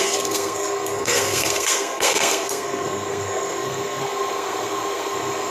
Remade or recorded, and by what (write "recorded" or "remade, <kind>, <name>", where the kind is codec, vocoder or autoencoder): remade, codec, SNAC